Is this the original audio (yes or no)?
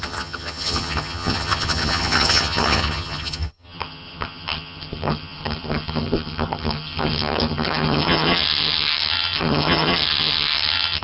no